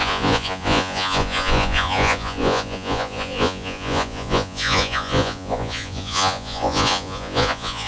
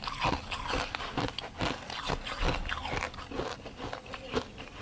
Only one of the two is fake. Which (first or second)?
first